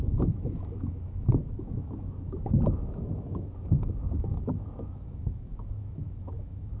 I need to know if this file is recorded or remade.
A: remade